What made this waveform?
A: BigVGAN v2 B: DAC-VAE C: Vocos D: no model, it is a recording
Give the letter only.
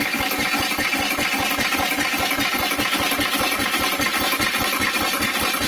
A